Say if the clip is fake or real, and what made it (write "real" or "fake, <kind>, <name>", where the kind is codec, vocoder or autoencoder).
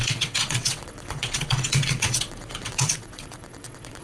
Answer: fake, vocoder, WaveNeXt